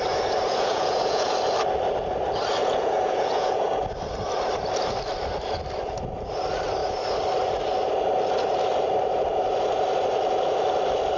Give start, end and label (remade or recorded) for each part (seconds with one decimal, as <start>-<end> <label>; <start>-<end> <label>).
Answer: 0.0-0.5 recorded; 0.5-1.3 remade; 1.3-2.6 recorded; 2.6-3.7 remade; 3.7-11.2 recorded